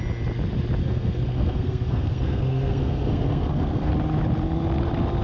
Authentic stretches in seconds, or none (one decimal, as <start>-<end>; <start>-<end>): 0.0-0.8; 3.9-5.2